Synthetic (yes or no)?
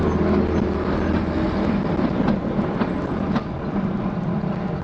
no